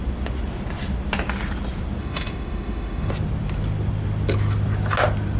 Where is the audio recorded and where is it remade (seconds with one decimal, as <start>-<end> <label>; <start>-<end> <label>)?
0.0-2.0 recorded; 2.0-3.1 remade; 3.1-5.4 recorded